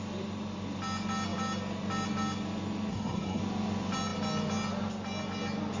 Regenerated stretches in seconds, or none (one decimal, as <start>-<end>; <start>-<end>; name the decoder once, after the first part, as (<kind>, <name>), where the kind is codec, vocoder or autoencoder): 2.9-3.4 (codec, SNAC)